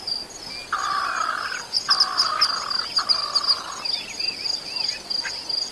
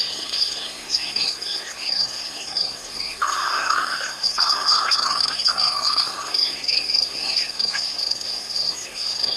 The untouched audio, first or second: first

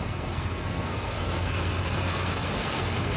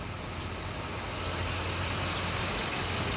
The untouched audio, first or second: second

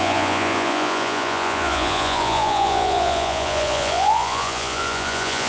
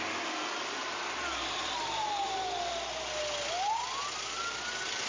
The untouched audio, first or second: second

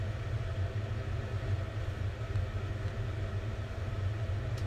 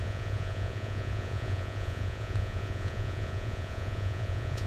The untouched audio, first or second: first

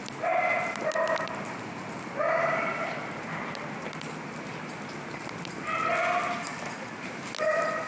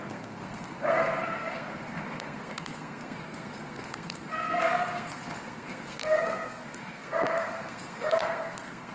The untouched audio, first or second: first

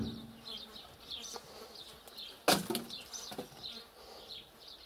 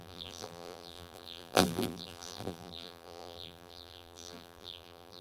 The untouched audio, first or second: first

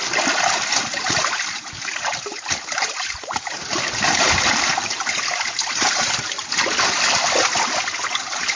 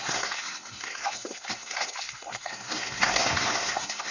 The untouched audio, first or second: first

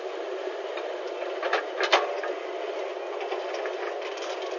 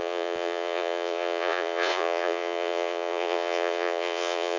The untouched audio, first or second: first